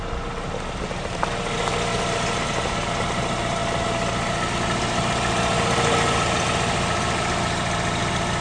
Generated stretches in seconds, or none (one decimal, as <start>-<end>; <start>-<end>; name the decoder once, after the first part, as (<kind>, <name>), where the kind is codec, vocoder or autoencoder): none